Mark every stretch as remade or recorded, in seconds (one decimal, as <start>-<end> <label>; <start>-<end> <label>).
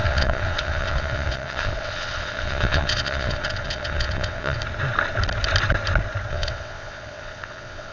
0.0-4.6 remade; 4.6-6.3 recorded; 6.3-7.9 remade